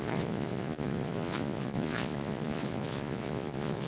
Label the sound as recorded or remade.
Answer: remade